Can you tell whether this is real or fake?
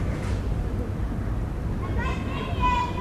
real